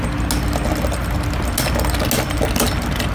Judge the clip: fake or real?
real